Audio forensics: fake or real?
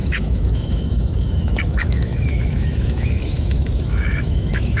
fake